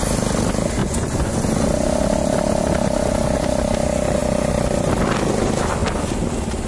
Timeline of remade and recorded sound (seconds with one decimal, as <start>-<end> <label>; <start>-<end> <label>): 0.0-0.8 recorded; 0.8-1.4 remade; 1.4-6.7 recorded